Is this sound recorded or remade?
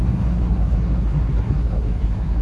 remade